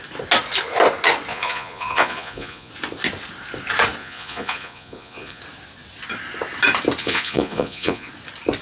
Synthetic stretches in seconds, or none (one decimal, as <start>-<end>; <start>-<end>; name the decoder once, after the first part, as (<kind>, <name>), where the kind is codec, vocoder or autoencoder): 1.3-2.7 (vocoder, Vocos); 4.0-5.4; 7.0-8.1